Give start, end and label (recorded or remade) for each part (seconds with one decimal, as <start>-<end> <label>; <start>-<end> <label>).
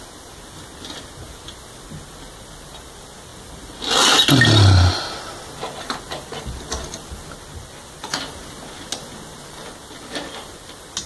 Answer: 0.0-11.1 recorded